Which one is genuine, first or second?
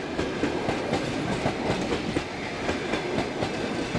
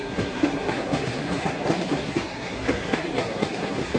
first